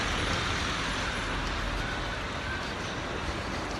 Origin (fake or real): real